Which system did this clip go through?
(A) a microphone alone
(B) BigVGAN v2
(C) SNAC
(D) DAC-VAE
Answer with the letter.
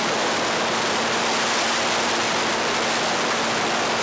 A